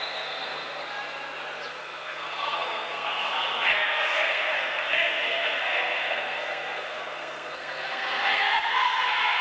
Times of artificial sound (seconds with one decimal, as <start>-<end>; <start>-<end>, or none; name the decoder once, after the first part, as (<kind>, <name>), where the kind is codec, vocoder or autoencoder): 0.0-0.8 (codec, SNAC); 1.7-9.4